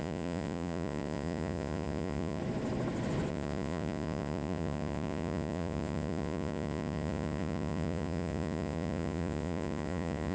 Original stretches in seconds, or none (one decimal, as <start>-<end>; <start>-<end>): 2.4-3.3